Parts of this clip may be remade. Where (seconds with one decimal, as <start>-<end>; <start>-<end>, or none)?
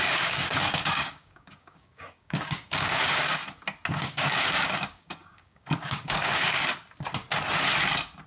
0.0-3.4; 3.9-6.6